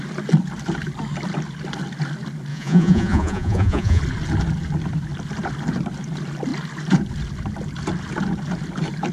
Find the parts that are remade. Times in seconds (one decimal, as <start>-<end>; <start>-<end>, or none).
2.5-4.0